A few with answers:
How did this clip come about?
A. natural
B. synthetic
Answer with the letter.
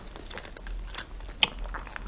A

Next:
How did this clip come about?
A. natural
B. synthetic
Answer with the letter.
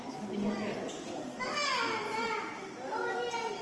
A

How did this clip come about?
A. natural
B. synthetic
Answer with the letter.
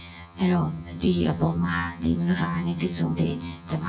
B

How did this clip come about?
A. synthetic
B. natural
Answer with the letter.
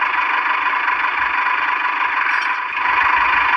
B